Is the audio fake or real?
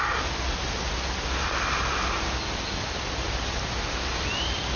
real